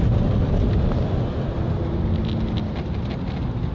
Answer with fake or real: real